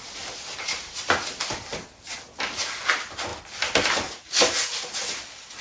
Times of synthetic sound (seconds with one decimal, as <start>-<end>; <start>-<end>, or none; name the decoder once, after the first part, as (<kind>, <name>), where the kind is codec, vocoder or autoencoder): none